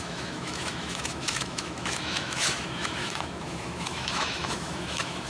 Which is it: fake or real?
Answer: fake